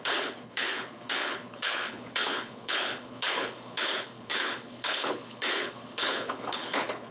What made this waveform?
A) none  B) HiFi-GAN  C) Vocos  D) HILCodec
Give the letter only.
D